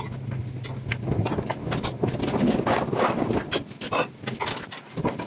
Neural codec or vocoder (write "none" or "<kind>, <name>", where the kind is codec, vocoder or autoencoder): none